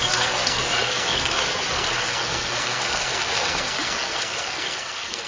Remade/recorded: remade